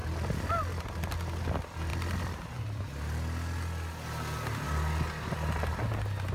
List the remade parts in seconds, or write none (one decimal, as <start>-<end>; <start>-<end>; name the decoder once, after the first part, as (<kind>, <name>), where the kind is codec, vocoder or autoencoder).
1.9-2.8 (vocoder, BigVGAN v2)